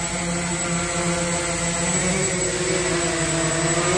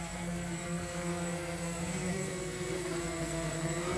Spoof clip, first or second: second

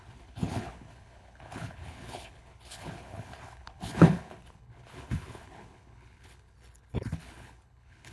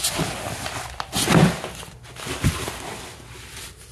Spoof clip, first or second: first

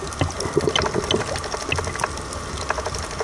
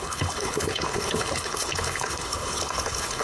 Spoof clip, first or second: second